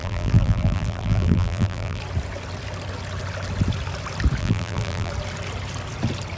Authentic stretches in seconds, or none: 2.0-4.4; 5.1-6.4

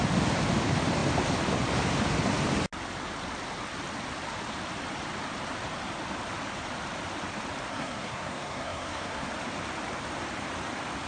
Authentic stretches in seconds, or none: 0.0-7.7; 9.3-11.1